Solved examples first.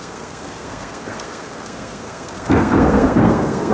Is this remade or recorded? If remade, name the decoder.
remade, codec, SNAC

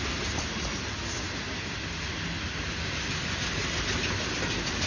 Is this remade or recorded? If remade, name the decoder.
recorded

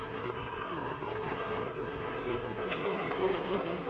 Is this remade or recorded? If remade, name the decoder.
remade, codec, SNAC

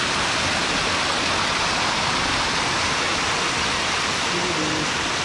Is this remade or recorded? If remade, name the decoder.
recorded